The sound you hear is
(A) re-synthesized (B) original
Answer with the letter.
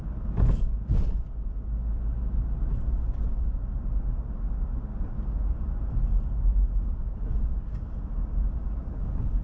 B